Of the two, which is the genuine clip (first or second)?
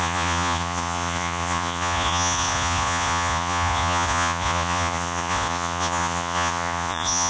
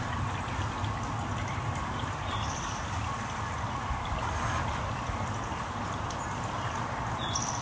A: second